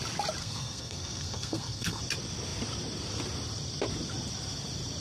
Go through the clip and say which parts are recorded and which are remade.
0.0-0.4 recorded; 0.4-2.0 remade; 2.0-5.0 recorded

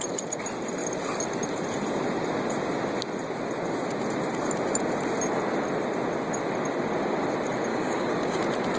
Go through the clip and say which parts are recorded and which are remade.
0.0-7.7 recorded; 7.7-8.4 remade; 8.4-8.8 recorded

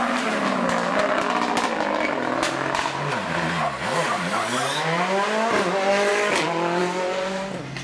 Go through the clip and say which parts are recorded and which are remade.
0.0-7.8 recorded

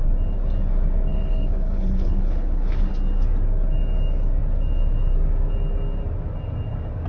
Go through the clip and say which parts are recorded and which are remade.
0.0-1.1 recorded; 1.1-2.9 remade; 2.9-7.1 recorded

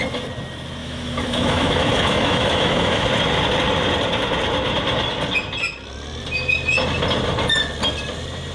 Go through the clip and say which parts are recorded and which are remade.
0.0-0.8 recorded; 0.8-3.1 remade; 3.1-8.5 recorded

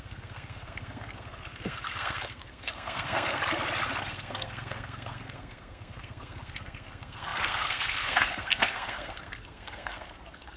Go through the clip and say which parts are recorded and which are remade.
0.0-3.4 remade; 3.4-4.0 recorded; 4.0-10.6 remade